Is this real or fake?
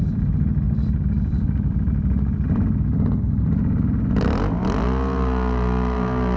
real